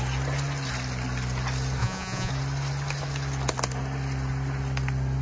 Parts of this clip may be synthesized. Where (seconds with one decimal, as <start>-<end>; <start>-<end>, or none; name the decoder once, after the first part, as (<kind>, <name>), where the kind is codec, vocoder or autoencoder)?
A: 1.8-2.3 (vocoder, Vocos)